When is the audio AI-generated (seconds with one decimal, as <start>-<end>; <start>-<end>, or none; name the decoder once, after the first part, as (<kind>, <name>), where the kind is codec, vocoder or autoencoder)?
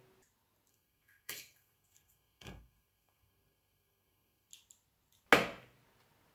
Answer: 0.7-4.5 (codec, SNAC)